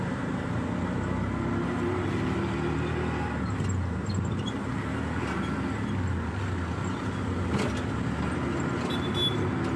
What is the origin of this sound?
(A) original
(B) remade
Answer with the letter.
A